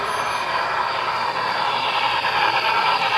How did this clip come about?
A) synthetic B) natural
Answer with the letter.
B